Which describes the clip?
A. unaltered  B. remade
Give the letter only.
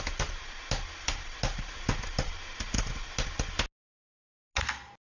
A